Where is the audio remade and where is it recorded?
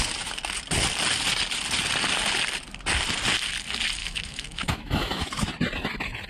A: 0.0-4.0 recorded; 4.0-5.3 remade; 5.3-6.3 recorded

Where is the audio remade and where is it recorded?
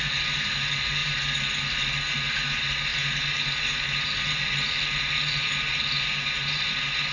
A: 0.0-7.1 recorded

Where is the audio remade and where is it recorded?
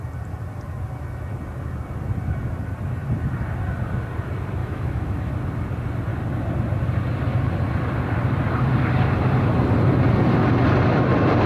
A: 0.0-4.6 recorded; 4.6-5.3 remade; 5.3-11.5 recorded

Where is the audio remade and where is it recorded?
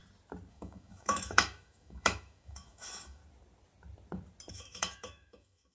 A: 0.0-0.5 recorded; 0.5-3.2 remade; 3.2-4.5 recorded; 4.5-5.7 remade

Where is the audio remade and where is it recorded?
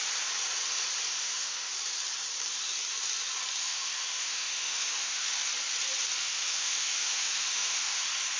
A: 0.0-1.2 recorded; 1.2-1.7 remade; 1.7-3.6 recorded; 3.6-5.3 remade; 5.3-6.2 recorded; 6.2-8.0 remade; 8.0-8.4 recorded